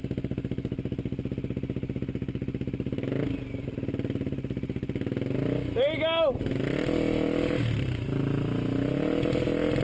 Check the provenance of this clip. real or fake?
real